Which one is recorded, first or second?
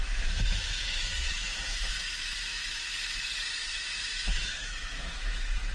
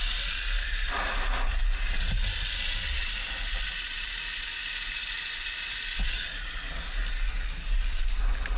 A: second